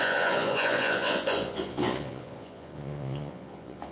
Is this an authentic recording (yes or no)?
no